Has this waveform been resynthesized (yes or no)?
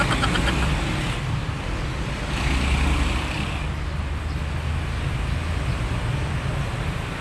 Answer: no